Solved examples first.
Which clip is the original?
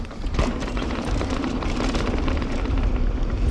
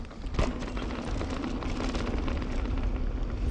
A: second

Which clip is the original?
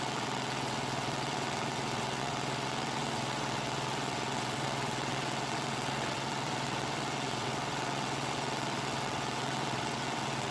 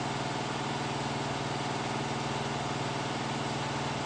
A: second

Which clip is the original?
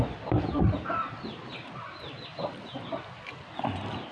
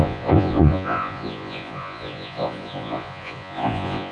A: first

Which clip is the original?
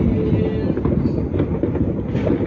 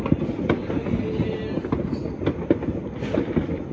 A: first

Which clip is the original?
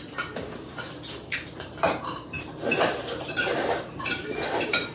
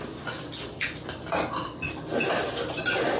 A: second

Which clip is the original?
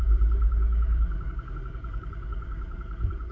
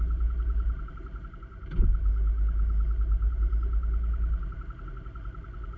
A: second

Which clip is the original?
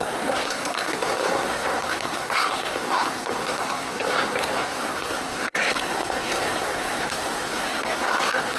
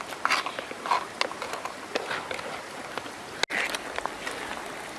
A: second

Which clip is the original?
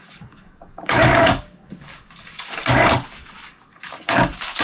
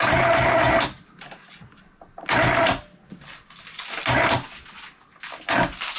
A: second